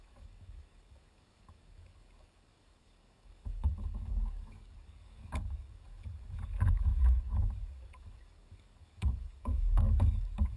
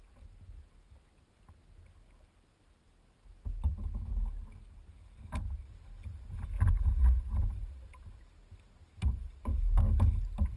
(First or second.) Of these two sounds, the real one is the second